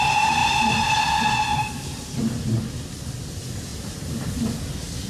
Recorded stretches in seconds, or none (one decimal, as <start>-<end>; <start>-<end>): 0.0-1.5; 2.6-3.7; 4.3-5.1

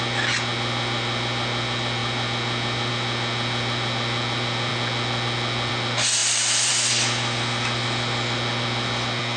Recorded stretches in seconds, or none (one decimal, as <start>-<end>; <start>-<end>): 0.0-9.4

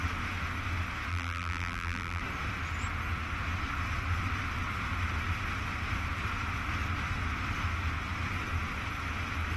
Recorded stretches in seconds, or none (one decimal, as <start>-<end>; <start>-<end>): 0.0-1.1; 2.2-9.6

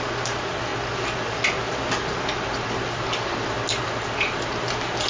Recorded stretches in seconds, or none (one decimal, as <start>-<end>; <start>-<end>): 0.7-3.8

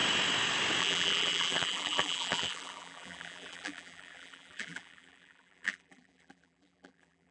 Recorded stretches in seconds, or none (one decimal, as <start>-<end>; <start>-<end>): 0.0-0.8

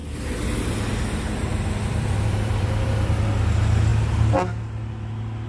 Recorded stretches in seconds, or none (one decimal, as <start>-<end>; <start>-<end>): 3.3-5.5

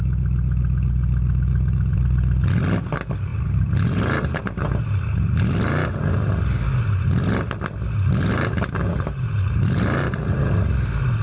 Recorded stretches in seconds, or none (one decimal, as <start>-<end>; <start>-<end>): 0.0-8.9; 10.4-11.2